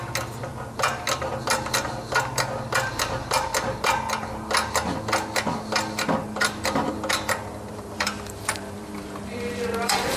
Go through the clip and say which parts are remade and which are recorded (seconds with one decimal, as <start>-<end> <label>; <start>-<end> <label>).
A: 0.0-6.2 recorded; 6.2-10.2 remade